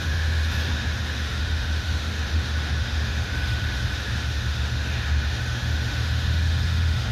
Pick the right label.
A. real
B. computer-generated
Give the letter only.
B